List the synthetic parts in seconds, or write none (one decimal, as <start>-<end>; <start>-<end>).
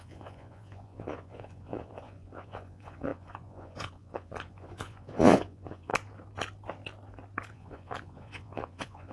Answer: 0.0-5.9; 7.5-9.1